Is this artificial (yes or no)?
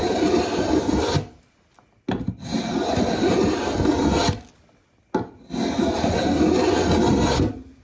no